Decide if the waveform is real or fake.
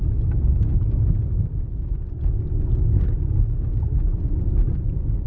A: real